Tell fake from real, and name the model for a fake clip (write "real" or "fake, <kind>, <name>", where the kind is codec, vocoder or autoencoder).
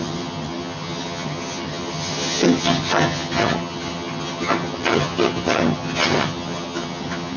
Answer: fake, vocoder, HiFi-GAN